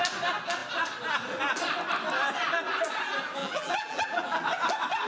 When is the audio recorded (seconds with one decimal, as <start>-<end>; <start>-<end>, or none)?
0.0-3.4; 4.4-5.1